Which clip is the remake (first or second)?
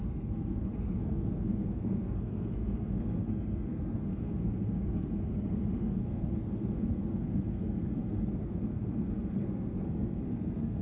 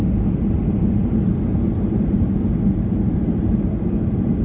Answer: first